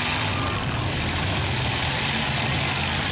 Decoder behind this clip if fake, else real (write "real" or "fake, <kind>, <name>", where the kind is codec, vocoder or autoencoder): real